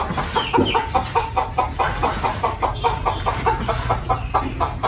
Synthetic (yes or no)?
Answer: no